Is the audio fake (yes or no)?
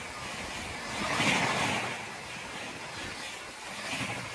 no